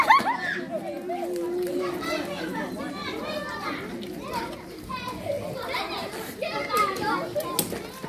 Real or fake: real